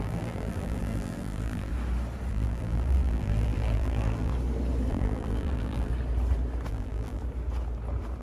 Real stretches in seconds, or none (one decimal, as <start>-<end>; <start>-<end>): 1.7-2.3; 4.3-4.9; 5.9-6.7; 7.2-8.2